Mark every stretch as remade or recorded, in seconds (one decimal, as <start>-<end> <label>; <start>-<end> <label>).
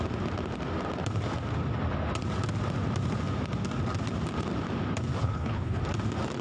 0.0-5.2 recorded; 5.2-5.8 remade; 5.8-6.4 recorded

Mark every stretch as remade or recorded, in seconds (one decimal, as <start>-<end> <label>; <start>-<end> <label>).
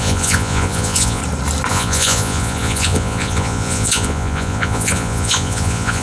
0.0-1.2 remade; 1.2-1.7 recorded; 1.7-6.0 remade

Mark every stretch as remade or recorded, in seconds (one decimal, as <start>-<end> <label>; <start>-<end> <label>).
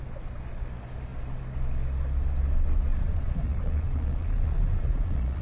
0.0-2.9 recorded; 2.9-5.4 remade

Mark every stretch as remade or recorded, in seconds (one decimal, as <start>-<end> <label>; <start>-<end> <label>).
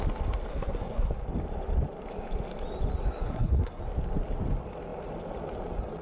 0.0-0.5 recorded; 0.5-1.2 remade; 1.2-3.3 recorded; 3.3-3.8 remade; 3.8-6.0 recorded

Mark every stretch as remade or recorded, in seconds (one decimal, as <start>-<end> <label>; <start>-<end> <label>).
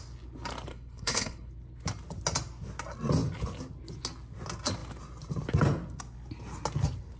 0.0-0.7 recorded; 0.7-1.5 remade; 1.5-7.2 recorded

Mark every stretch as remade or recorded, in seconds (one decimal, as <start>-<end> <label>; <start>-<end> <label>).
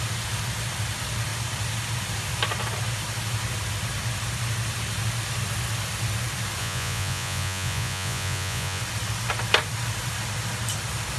0.0-6.6 recorded; 6.6-8.8 remade; 8.8-11.2 recorded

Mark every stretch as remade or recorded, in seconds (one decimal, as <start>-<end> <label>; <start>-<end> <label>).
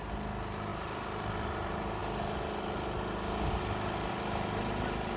0.0-5.2 recorded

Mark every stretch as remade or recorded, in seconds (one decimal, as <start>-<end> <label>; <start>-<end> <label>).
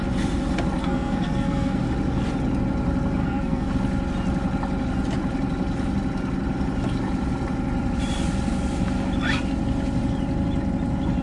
0.0-0.8 recorded; 0.8-1.8 remade; 1.8-3.2 recorded; 3.2-3.7 remade; 3.7-11.2 recorded